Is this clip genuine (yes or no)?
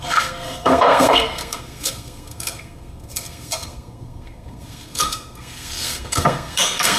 no